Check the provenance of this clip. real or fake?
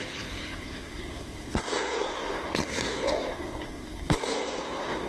fake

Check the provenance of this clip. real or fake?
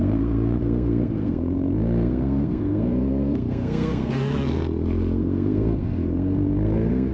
fake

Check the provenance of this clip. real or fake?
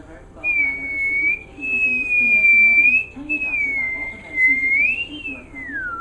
real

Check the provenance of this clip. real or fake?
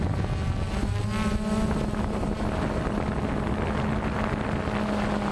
real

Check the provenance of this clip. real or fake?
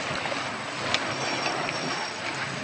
real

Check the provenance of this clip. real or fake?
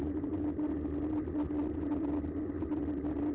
real